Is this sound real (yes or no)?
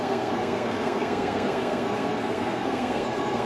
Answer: no